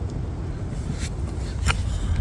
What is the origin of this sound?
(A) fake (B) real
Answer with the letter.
B